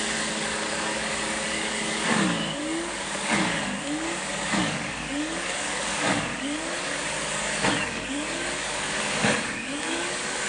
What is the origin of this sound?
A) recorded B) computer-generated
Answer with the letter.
B